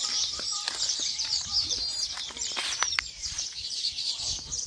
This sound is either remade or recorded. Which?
remade